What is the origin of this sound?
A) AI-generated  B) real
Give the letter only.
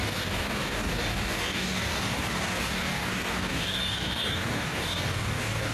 A